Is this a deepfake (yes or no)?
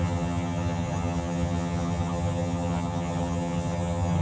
yes